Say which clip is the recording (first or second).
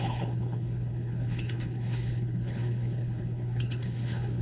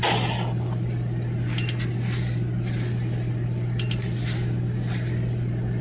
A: second